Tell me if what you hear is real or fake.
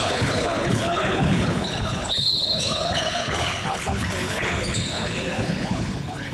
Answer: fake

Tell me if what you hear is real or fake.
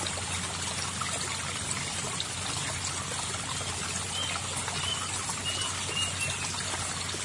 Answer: real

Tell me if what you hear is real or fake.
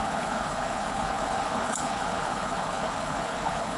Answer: fake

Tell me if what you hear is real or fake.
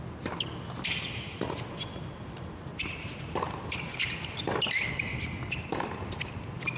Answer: real